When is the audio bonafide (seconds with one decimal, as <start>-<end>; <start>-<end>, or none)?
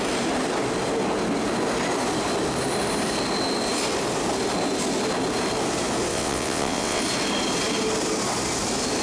0.0-6.1; 7.0-9.0